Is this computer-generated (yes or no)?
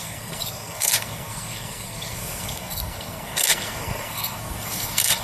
yes